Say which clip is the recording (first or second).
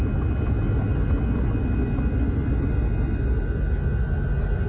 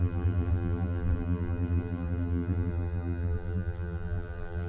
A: first